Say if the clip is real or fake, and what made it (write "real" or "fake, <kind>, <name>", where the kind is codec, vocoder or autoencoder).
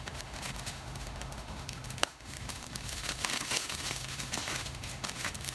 fake, autoencoder, DAC-VAE